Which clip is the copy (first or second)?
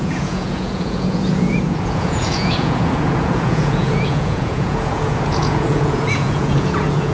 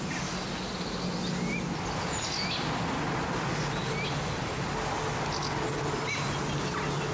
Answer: first